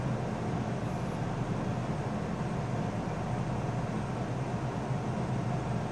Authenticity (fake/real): real